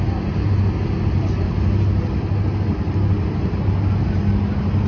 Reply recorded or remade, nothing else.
recorded